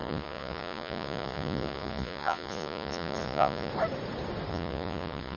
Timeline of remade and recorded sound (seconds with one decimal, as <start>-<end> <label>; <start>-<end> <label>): 0.0-3.7 remade; 3.7-4.5 recorded; 4.5-5.4 remade